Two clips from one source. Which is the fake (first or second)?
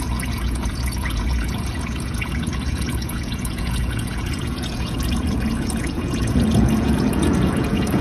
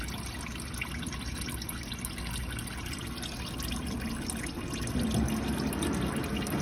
first